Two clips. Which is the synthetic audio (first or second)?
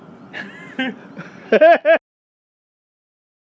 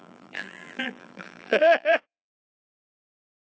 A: second